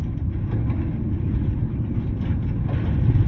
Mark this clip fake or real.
real